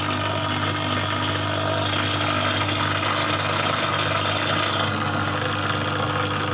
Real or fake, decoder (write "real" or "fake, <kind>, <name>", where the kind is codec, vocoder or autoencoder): real